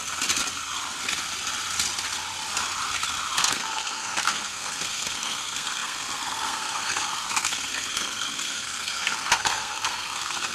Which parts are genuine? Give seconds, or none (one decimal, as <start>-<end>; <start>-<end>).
0.0-3.4